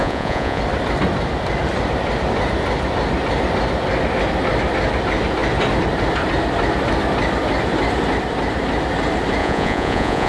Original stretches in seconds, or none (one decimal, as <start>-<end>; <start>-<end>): 0.6-9.4